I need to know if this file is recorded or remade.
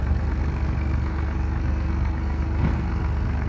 remade